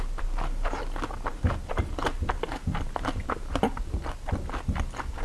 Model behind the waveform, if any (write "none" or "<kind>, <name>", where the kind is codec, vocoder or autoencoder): none